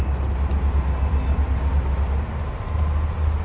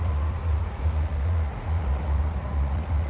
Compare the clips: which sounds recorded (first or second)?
first